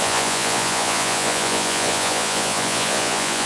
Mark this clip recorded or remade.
remade